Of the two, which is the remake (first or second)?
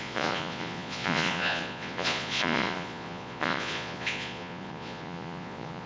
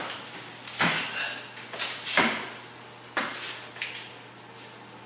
first